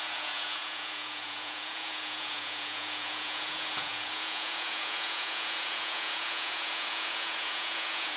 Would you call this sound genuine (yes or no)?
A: no